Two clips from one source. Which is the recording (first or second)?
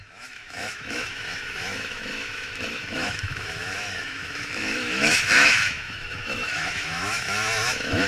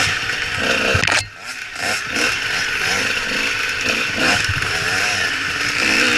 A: second